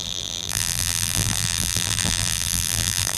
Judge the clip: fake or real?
fake